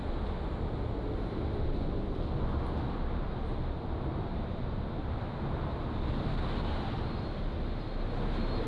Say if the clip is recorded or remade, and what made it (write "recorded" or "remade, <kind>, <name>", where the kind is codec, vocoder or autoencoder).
recorded